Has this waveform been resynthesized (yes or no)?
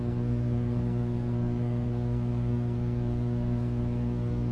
yes